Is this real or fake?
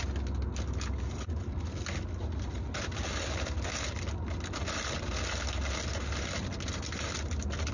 real